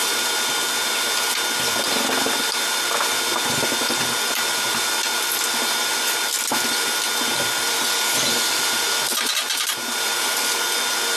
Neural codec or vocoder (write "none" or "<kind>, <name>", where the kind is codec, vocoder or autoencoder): none